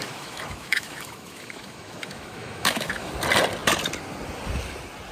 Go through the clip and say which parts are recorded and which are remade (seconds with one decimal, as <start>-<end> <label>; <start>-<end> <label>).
0.0-3.1 remade; 3.1-5.1 recorded